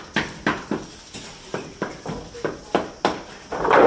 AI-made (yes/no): no